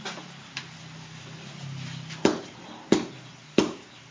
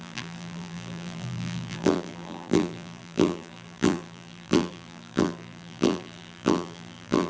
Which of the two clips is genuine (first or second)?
first